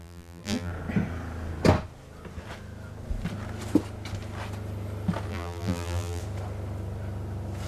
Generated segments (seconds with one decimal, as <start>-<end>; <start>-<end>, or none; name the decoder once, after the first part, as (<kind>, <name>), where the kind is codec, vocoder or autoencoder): 0.0-0.7 (vocoder, BigVGAN v2); 5.3-6.2